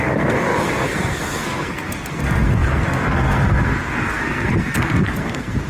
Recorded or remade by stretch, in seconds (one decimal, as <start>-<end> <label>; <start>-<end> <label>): 0.0-5.7 remade